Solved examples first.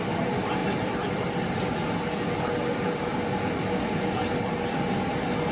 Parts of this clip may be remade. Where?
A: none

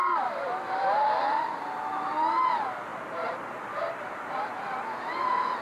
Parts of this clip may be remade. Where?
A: 0.0-1.6 (vocoder, BigVGAN v2); 2.9-4.1

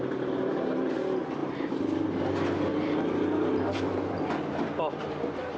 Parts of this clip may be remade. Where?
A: 1.4-2.2 (vocoder, BigVGAN v2)